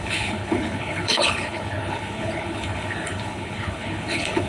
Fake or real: fake